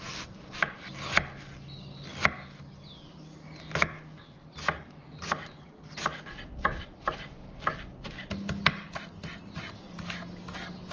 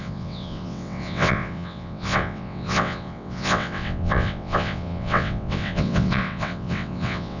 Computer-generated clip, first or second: second